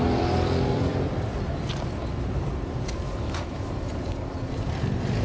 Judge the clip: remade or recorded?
remade